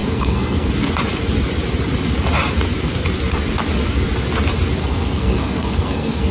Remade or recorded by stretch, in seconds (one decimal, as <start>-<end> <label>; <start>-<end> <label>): 0.0-0.7 remade; 0.7-4.8 recorded; 4.8-6.3 remade